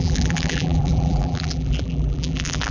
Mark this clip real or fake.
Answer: fake